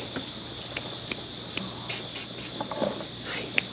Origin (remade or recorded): recorded